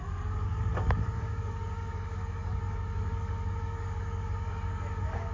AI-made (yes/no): yes